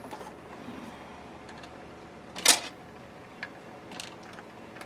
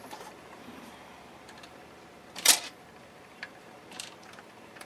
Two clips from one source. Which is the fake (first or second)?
second